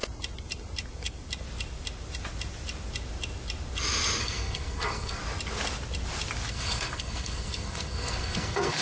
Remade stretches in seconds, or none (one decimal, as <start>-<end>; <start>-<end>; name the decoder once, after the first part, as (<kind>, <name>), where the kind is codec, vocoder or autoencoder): 4.2-5.2 (codec, SNAC); 6.5-8.8